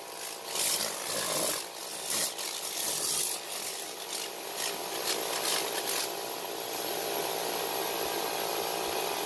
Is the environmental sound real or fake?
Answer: real